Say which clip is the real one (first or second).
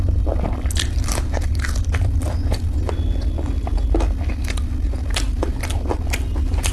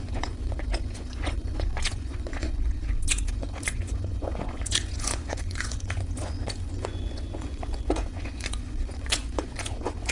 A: first